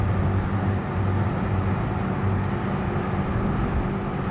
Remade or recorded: recorded